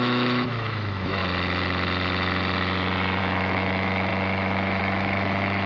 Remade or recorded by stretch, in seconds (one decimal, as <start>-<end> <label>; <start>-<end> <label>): 0.0-1.2 remade; 1.2-3.2 recorded; 3.2-5.7 remade